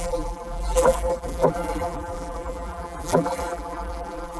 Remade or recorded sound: remade